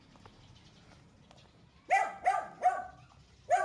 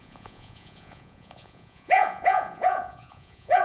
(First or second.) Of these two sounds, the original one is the first